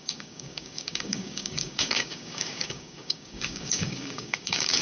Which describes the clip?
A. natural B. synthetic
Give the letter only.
B